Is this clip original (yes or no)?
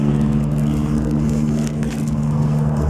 no